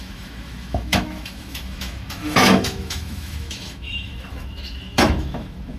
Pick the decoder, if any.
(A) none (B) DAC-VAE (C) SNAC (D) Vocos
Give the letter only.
B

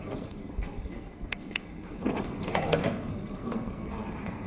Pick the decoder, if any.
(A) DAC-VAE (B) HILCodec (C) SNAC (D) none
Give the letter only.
C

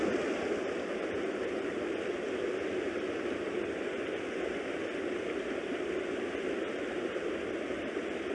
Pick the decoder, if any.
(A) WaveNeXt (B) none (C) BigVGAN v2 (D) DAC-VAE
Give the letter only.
B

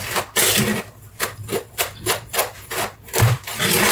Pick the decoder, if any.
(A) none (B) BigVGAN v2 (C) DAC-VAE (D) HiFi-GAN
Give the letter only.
B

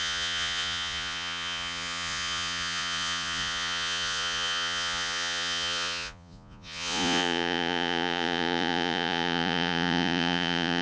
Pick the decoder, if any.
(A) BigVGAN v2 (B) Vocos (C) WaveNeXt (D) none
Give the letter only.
B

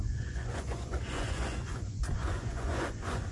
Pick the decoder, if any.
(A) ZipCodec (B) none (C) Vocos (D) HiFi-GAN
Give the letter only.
C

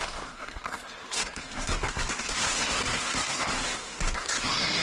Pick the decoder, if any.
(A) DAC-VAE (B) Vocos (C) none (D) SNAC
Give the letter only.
D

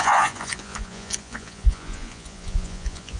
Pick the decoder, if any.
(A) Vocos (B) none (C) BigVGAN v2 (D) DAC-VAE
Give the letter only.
A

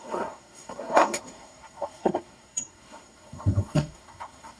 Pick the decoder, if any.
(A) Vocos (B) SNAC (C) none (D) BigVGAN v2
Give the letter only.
B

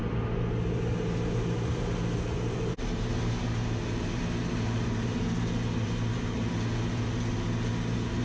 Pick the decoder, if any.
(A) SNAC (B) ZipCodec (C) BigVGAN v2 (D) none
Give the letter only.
D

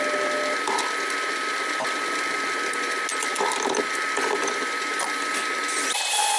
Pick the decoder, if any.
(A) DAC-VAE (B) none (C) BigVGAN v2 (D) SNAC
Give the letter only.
B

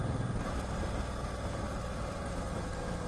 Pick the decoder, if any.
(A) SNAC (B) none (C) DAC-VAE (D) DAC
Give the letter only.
B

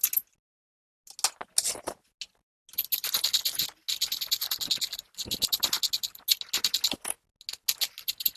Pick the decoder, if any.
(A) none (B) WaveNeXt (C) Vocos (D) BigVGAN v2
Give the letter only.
A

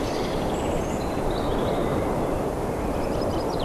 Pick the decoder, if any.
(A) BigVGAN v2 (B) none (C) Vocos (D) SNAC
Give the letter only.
A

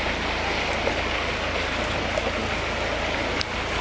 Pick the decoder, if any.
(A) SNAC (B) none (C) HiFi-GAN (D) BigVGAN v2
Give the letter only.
B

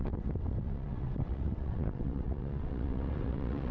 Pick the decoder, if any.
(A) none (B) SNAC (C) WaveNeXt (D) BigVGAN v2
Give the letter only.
C